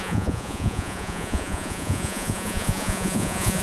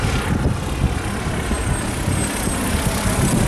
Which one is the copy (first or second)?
first